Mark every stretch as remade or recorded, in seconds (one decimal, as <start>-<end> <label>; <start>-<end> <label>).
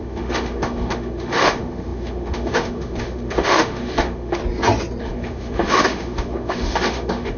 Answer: 0.0-4.4 remade; 4.4-5.0 recorded; 5.0-7.4 remade